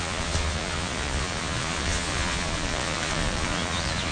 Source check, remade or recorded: remade